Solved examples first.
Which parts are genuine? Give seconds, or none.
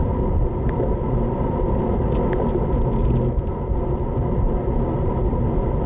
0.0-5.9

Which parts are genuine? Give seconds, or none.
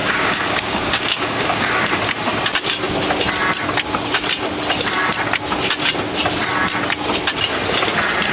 1.7-8.3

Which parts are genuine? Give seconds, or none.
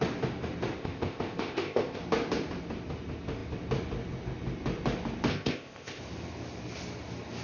0.0-0.8; 2.0-5.3; 6.0-7.4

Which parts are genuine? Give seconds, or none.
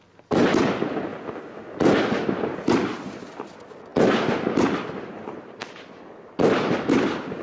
0.0-7.4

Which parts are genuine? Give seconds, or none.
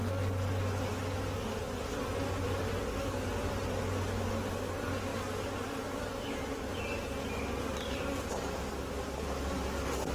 0.0-10.1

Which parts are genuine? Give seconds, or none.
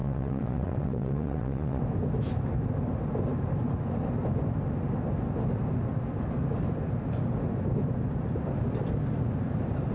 1.8-9.9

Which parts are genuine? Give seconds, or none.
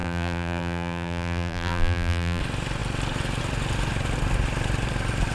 2.4-5.3